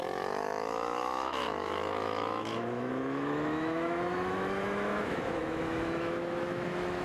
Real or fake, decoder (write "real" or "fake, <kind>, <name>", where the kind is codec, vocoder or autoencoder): fake, autoencoder, DAC-VAE